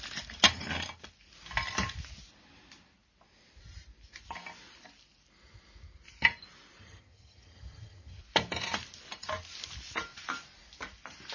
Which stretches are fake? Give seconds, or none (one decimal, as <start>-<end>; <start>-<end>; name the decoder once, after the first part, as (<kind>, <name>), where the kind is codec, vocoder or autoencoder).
6.8-8.2 (vocoder, HiFi-GAN)